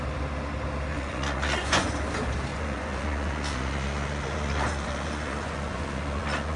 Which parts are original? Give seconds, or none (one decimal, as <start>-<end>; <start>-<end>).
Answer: 0.0-0.9; 1.9-2.5